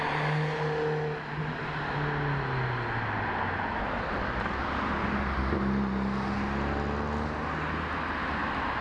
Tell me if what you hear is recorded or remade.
recorded